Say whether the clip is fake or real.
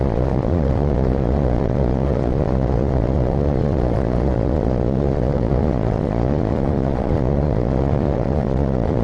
fake